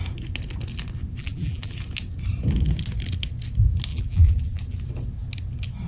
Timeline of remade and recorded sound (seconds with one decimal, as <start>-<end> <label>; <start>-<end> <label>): 0.0-1.2 recorded; 1.2-1.7 remade; 1.7-3.9 recorded; 3.9-4.6 remade; 4.6-5.9 recorded